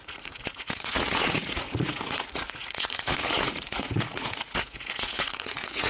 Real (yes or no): no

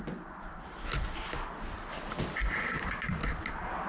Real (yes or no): yes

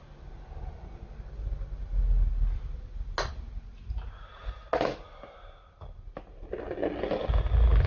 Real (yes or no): yes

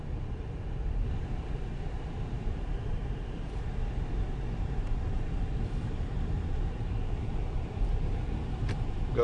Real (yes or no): no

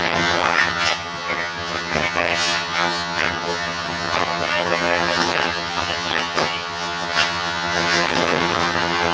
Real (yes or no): no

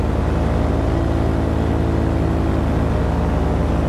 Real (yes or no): yes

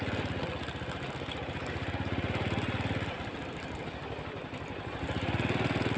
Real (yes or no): yes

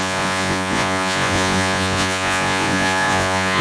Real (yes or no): no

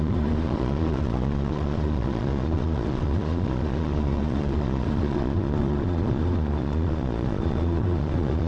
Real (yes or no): no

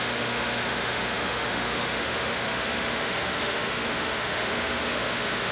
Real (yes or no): no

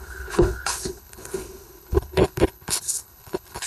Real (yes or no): no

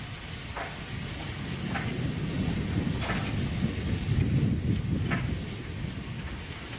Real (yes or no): yes